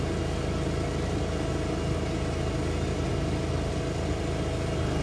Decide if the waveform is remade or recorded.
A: recorded